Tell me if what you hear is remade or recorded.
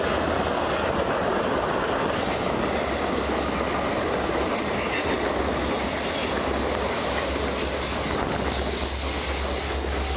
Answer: recorded